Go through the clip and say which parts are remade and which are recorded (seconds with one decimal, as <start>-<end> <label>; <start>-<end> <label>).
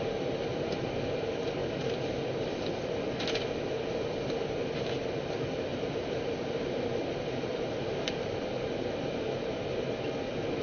0.0-5.7 recorded; 5.7-8.5 remade; 8.5-10.6 recorded